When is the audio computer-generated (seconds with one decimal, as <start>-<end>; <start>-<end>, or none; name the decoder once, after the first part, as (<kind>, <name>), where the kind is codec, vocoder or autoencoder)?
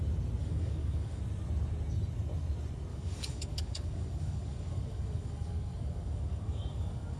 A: 0.4-1.2 (codec, DAC); 2.9-7.2